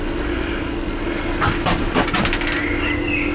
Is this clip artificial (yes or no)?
no